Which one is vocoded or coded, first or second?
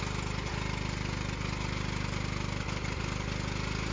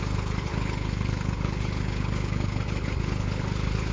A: second